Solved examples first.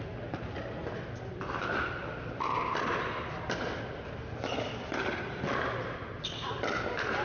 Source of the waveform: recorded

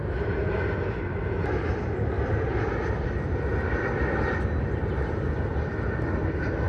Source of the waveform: recorded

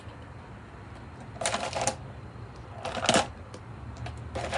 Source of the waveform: recorded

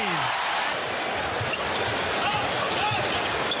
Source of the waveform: recorded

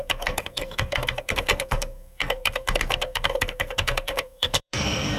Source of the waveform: remade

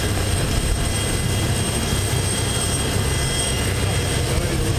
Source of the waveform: recorded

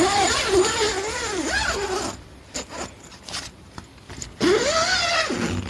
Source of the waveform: recorded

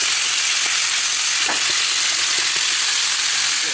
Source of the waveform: recorded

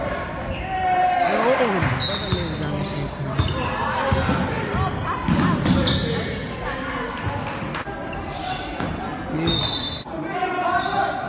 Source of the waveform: recorded